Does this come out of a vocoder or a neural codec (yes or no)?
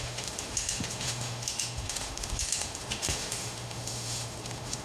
yes